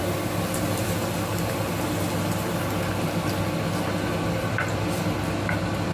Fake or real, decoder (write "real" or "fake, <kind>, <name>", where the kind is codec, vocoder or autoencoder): real